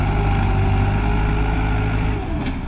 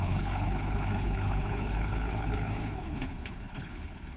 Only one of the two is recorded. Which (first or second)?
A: first